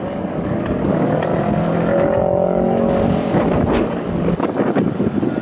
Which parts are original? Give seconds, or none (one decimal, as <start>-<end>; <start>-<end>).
1.3-2.0